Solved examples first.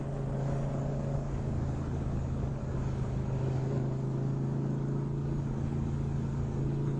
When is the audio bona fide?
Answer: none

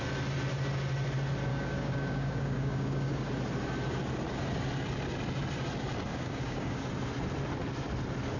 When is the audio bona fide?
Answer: 0.0-1.5; 3.3-6.1; 6.8-8.4